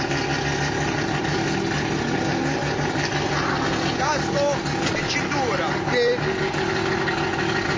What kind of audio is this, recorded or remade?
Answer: recorded